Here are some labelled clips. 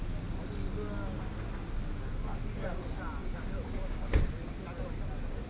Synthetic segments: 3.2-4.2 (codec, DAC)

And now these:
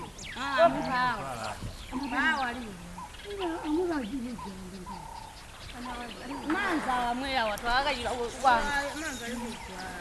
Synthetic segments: 1.4-2.0 (codec, HILCodec)

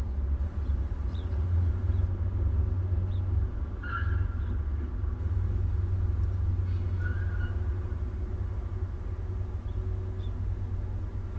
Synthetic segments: 1.1-1.7 (vocoder, Vocos)

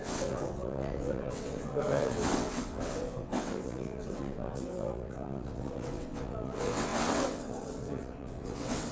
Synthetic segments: 0.0-8.9 (vocoder, WaveNeXt)

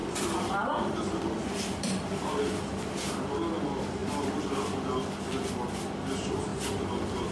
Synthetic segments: 0.0-2.4 (vocoder, BigVGAN v2)

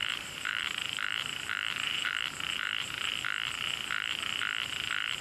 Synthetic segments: 0.0-3.1 (vocoder, BigVGAN v2)